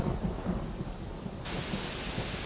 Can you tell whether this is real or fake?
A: real